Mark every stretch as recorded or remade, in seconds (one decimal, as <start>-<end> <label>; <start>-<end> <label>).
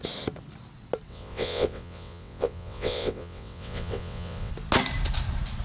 0.0-1.1 recorded; 1.1-4.5 remade; 4.5-5.6 recorded